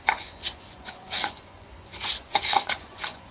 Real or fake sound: fake